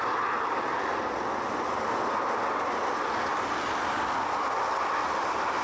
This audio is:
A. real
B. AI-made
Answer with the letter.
A